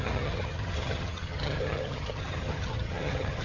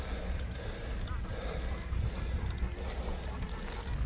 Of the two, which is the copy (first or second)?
first